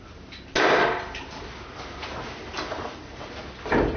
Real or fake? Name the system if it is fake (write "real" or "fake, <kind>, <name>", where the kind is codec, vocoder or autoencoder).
real